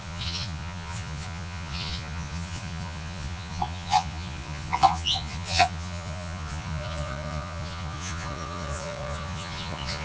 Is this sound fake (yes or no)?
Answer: yes